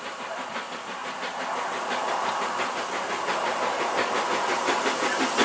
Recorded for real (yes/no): yes